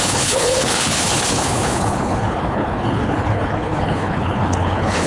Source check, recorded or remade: remade